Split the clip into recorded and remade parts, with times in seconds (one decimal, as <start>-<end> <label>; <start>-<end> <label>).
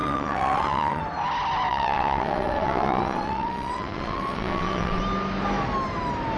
0.0-1.0 remade; 1.0-1.7 recorded; 1.7-5.0 remade; 5.0-6.4 recorded